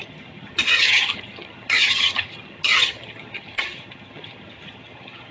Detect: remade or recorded remade